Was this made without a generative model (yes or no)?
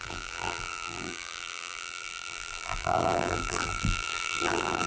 no